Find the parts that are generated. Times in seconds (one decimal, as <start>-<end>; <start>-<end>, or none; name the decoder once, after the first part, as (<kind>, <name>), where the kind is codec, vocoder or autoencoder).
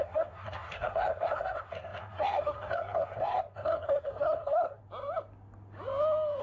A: 0.0-4.8 (codec, SNAC)